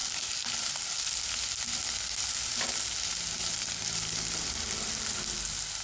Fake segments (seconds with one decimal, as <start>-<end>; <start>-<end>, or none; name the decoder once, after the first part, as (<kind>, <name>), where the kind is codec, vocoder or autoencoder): none